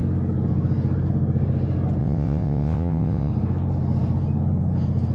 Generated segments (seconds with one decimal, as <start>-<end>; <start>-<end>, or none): 2.0-3.3